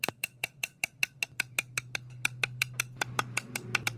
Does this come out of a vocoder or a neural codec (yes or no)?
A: no